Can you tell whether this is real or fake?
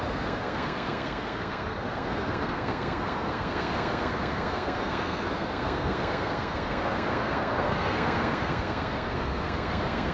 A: fake